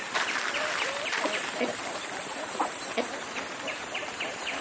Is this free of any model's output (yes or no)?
yes